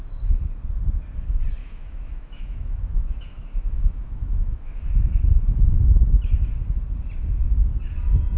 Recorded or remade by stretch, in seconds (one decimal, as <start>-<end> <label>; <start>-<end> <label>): 0.0-1.6 recorded; 1.6-5.2 remade; 5.2-8.4 recorded